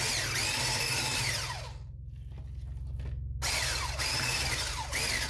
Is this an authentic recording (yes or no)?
yes